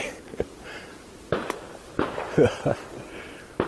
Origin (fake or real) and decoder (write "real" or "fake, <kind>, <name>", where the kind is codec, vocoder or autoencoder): real